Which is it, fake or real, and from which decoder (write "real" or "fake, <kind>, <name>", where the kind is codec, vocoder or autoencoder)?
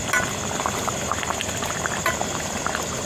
real